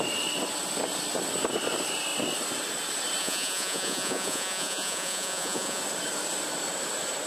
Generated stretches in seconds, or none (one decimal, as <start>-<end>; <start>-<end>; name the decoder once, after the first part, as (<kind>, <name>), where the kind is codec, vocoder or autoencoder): 3.2-5.8 (vocoder, Vocos)